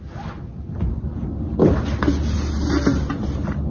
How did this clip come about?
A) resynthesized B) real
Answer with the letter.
B